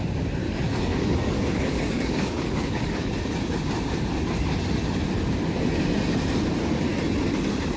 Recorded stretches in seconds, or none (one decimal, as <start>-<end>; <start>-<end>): 0.0-0.4; 3.1-7.8